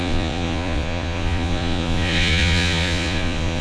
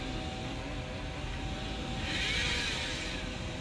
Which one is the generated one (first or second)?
first